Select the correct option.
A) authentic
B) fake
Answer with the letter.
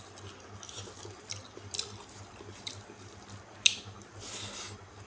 A